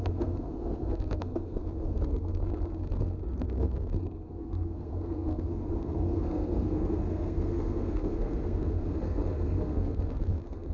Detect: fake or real fake